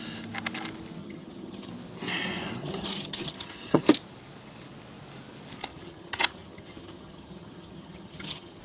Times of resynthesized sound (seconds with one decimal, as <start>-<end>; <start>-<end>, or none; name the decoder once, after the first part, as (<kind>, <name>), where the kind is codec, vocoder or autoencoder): 1.0-1.7 (vocoder, HiFi-GAN); 2.6-3.8; 5.7-8.6